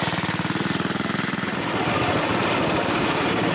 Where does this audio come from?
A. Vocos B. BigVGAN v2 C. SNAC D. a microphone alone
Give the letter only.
D